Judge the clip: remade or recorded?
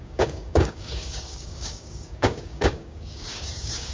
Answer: remade